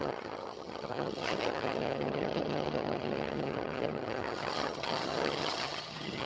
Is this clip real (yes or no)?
no